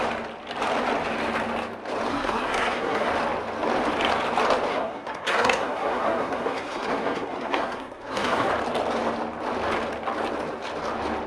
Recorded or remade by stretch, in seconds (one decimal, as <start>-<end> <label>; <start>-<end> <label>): 0.0-2.1 recorded; 2.1-3.1 remade; 3.1-4.7 recorded; 4.7-8.5 remade; 8.5-11.3 recorded